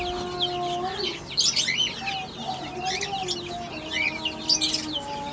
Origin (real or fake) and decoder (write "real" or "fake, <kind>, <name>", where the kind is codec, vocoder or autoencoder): real